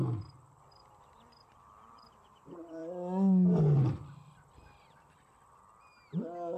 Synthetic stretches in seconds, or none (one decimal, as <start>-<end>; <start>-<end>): 0.6-2.8